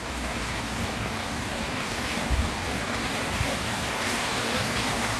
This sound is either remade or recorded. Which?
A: remade